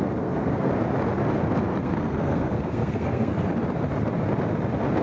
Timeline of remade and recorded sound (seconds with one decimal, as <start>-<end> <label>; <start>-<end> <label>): 0.0-0.7 remade; 0.7-1.7 recorded; 1.7-3.5 remade; 3.5-5.0 recorded